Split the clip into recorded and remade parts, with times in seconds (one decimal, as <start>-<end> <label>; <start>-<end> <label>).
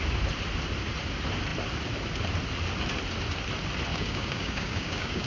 0.0-3.9 recorded; 3.9-5.3 remade